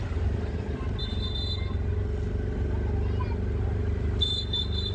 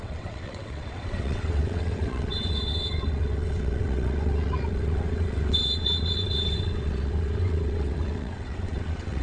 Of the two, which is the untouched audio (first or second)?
first